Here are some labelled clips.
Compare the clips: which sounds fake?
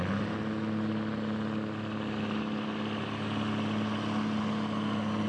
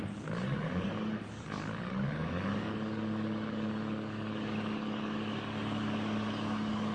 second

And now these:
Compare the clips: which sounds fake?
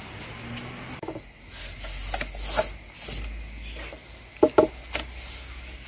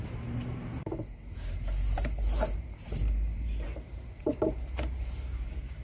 second